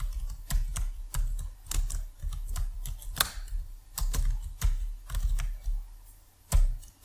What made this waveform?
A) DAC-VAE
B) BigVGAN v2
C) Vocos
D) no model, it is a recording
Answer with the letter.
D